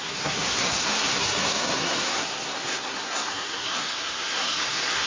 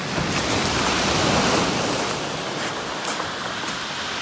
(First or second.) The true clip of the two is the second